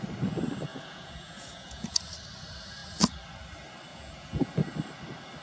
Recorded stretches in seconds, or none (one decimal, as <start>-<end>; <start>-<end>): 0.0-0.7; 2.0-3.9; 4.5-5.4